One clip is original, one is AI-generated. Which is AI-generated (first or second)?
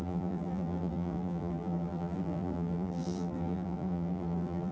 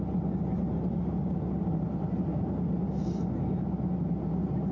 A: first